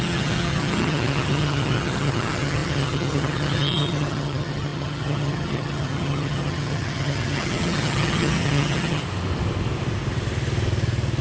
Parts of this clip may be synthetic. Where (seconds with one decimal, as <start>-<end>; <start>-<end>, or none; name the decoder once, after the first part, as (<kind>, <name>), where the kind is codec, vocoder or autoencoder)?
0.0-9.0 (vocoder, HiFi-GAN)